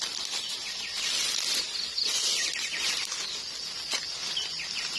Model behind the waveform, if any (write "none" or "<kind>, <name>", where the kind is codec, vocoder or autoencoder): none